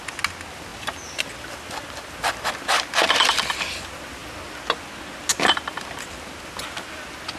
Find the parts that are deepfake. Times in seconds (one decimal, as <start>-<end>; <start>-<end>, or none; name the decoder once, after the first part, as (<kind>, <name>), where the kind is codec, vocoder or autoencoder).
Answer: none

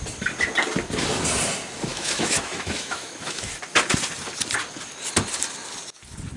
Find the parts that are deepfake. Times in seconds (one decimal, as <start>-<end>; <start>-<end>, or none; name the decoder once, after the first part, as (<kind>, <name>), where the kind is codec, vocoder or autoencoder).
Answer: 1.9-3.5 (autoencoder, DAC-VAE)